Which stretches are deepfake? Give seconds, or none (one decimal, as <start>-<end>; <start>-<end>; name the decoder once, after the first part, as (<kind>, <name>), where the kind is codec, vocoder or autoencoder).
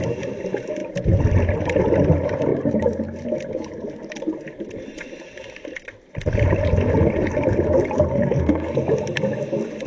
8.1-8.8 (codec, SNAC)